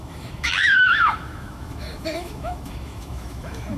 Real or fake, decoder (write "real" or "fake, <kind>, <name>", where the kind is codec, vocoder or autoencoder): fake, autoencoder, DAC-VAE